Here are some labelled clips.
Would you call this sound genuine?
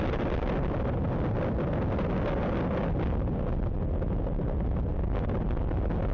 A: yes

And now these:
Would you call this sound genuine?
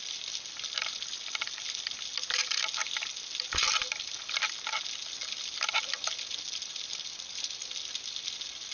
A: yes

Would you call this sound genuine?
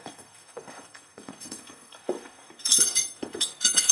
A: no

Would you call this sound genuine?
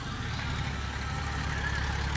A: yes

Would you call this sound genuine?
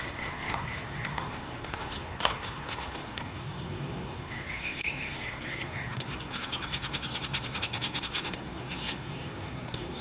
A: no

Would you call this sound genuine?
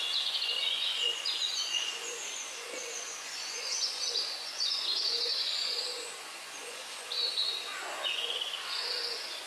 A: no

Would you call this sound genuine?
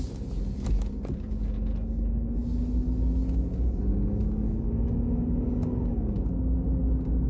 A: yes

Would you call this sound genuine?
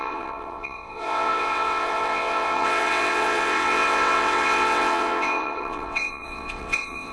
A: no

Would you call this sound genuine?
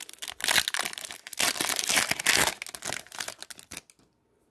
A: yes